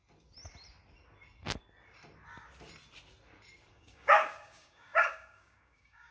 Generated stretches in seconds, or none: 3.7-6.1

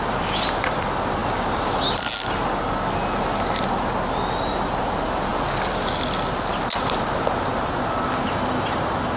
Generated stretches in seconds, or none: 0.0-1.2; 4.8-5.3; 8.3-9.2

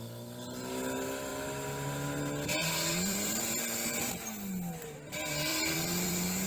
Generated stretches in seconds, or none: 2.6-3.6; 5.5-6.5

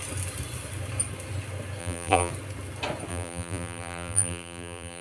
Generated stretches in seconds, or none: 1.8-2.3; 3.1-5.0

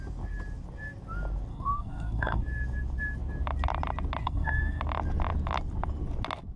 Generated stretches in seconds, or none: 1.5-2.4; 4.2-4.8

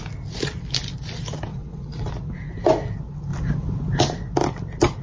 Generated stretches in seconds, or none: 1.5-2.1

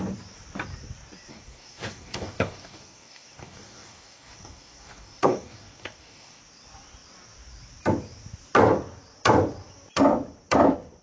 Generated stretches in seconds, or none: 1.3-6.4